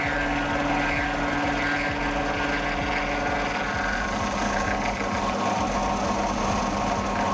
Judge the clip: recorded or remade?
recorded